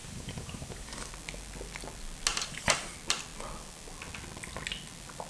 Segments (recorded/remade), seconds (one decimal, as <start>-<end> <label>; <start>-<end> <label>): 0.0-1.1 remade; 1.1-2.3 recorded; 2.3-2.9 remade; 2.9-5.3 recorded